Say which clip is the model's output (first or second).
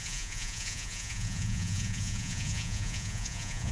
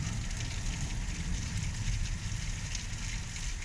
first